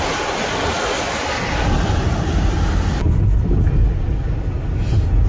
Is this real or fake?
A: real